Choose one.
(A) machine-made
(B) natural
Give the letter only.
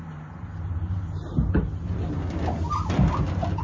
B